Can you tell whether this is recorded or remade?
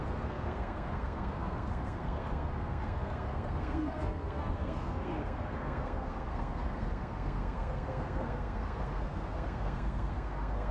remade